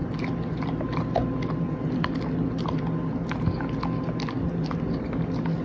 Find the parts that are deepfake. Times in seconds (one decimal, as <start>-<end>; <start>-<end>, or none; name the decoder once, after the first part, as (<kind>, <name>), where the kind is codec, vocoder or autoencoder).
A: none